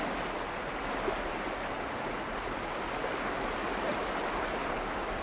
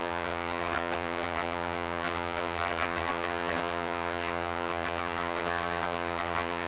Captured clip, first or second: first